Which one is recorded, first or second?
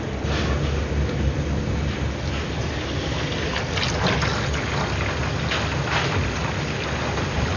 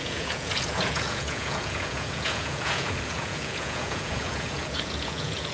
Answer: first